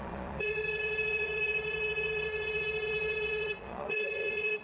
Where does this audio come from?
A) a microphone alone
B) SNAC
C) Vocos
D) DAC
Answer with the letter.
C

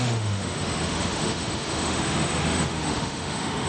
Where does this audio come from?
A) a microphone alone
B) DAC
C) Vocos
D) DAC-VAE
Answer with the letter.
D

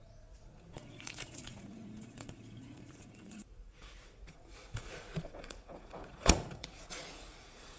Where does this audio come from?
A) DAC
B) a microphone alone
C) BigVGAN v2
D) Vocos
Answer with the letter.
D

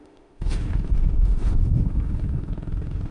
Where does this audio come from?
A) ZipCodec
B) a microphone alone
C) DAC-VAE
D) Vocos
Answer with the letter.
C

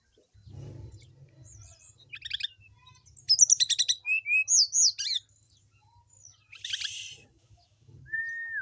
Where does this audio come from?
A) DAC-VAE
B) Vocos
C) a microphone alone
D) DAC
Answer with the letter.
C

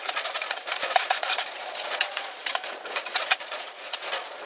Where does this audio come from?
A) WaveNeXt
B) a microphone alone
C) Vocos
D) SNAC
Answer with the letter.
C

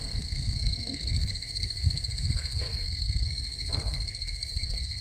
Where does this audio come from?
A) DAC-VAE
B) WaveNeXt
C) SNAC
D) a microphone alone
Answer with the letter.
C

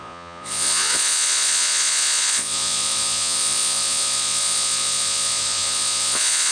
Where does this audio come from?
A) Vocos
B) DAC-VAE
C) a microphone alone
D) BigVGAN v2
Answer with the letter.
A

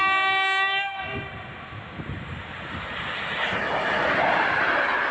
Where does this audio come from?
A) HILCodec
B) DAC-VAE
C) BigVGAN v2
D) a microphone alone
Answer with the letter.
D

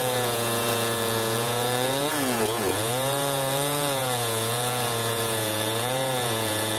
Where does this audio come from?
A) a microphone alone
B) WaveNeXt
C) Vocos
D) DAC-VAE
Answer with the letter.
C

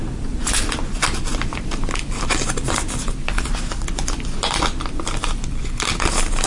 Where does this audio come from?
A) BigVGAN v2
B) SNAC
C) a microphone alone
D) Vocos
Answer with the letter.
C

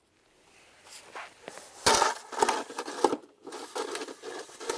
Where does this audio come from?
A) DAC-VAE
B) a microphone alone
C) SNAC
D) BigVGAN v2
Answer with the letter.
B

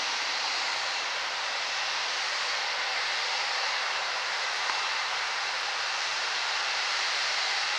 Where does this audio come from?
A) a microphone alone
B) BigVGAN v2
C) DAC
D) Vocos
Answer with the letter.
B